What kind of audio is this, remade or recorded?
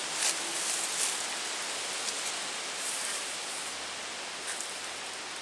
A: recorded